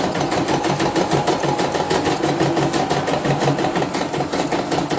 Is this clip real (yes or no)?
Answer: yes